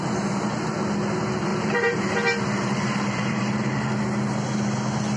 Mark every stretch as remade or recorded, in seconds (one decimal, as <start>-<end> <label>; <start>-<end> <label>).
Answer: 0.0-1.5 recorded; 1.5-2.1 remade; 2.1-2.6 recorded; 2.6-3.9 remade; 3.9-5.2 recorded